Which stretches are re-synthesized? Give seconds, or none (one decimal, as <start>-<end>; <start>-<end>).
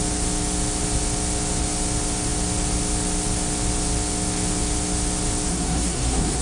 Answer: 5.5-6.4